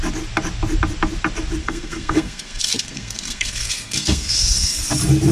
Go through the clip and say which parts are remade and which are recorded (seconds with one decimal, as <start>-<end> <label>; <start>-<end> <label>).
0.0-1.6 recorded; 1.6-4.8 remade; 4.8-5.3 recorded